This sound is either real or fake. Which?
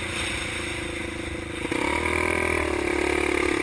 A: real